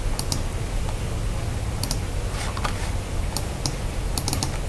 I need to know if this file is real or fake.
real